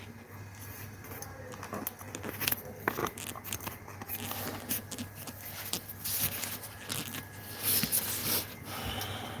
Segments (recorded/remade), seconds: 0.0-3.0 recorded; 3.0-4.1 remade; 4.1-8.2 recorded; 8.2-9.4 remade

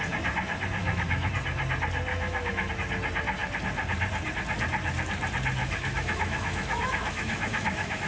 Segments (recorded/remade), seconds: 0.0-0.8 recorded; 0.8-1.3 remade; 1.3-2.1 recorded; 2.1-2.7 remade; 2.7-5.6 recorded; 5.6-8.1 remade

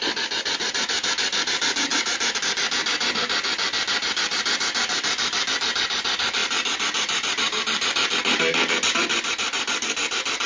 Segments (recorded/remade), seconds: 0.0-10.5 remade